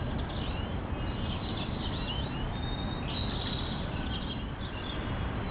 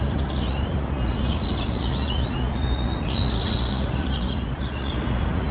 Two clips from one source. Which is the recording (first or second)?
first